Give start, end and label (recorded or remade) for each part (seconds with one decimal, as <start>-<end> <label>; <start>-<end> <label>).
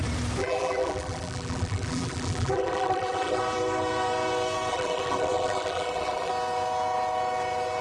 0.0-0.4 recorded; 0.4-3.4 remade; 3.4-4.7 recorded; 4.7-6.3 remade; 6.3-7.8 recorded